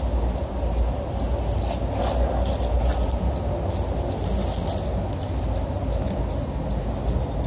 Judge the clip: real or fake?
real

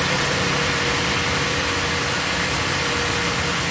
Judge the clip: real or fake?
real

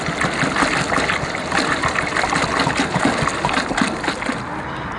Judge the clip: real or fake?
real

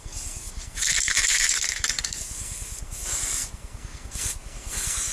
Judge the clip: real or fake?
fake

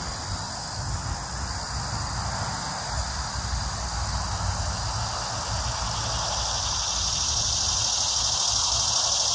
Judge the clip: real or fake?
real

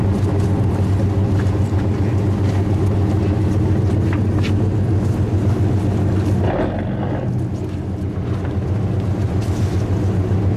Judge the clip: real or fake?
real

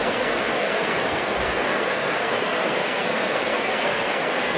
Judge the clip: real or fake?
fake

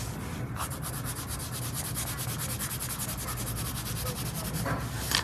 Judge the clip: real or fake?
real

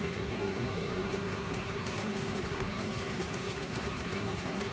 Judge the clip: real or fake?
fake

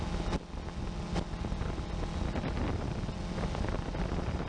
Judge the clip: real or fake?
real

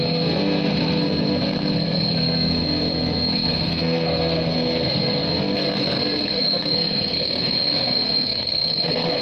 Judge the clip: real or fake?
fake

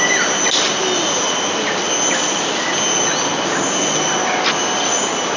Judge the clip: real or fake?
real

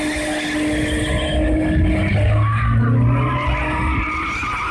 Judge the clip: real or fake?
real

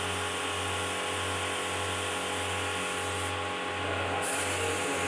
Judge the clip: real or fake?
real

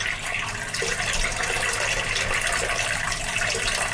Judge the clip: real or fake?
real